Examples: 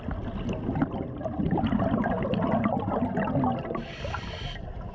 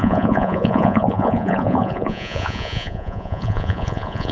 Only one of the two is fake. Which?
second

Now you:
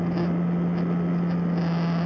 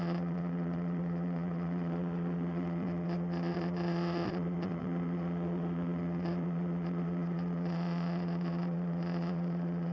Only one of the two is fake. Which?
second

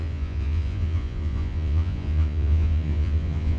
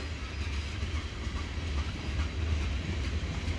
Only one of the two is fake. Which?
first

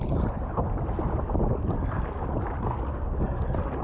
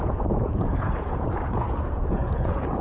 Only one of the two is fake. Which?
second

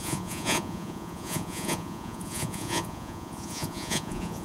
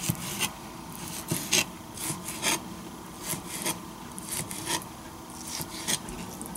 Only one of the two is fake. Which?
first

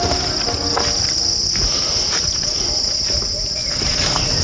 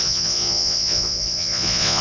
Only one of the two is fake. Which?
second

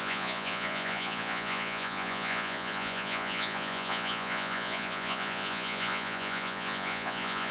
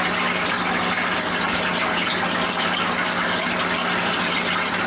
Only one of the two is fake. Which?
first